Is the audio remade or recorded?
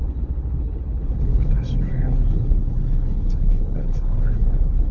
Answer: remade